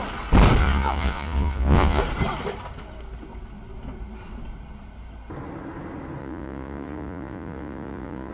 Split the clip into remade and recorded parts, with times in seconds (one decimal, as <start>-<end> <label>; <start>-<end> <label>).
0.0-0.6 recorded; 0.6-2.0 remade; 2.0-6.2 recorded; 6.2-8.3 remade